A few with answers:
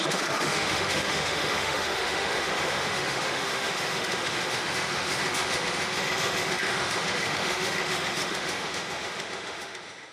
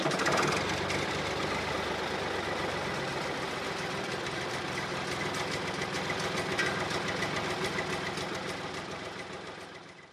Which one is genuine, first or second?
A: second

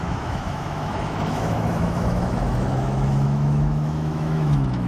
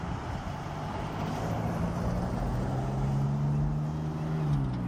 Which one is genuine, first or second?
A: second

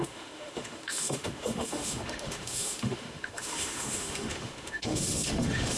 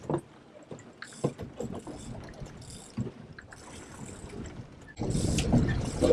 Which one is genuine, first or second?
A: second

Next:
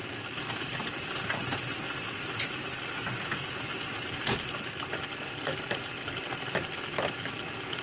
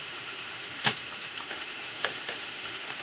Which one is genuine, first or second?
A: first